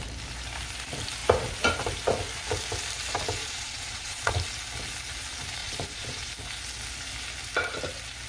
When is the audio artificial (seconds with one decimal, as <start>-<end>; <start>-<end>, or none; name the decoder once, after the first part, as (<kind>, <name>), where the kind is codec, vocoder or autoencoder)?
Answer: 3.4-4.3 (vocoder, Vocos); 5.6-6.3